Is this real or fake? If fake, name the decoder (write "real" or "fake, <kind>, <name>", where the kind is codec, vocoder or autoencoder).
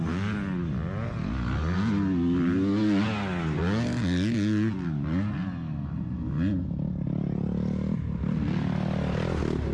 real